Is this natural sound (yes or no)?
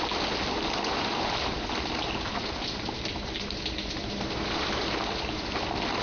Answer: yes